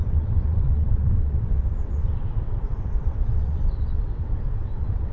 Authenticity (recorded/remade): remade